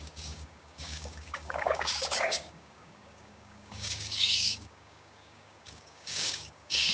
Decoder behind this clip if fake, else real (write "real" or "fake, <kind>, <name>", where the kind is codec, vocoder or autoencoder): fake, codec, DAC